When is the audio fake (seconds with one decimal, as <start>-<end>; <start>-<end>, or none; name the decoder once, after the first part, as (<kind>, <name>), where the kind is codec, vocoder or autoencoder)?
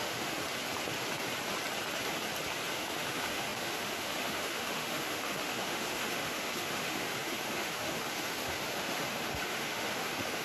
0.0-0.4 (autoencoder, DAC-VAE); 2.7-10.4